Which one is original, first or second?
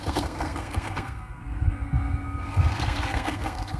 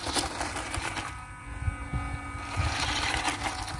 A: second